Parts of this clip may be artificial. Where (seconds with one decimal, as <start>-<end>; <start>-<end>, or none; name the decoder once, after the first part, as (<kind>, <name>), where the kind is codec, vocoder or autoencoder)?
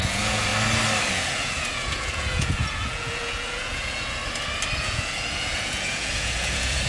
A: 0.0-0.5 (vocoder, Vocos); 1.1-4.2; 4.8-6.9